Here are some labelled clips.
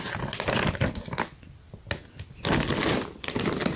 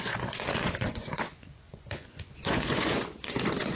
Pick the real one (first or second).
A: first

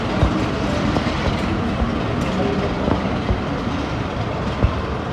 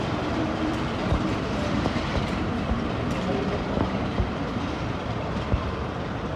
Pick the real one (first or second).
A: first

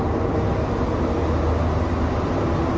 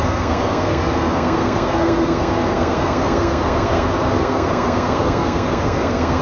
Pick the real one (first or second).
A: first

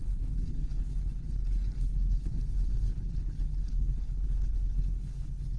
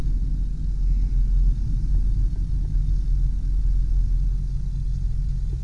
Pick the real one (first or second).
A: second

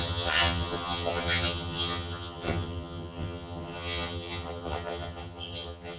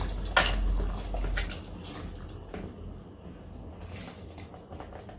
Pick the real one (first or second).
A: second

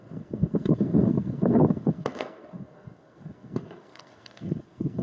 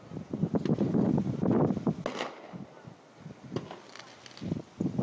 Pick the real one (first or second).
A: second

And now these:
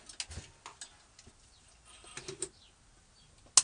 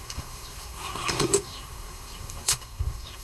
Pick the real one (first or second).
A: first